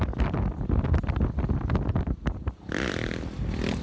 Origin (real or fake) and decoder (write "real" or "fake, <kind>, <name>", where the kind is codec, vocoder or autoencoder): real